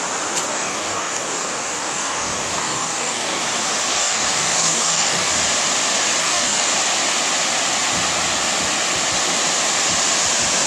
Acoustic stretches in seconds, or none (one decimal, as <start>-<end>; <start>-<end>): 0.0-0.5; 3.4-3.9; 5.3-6.2; 6.7-10.7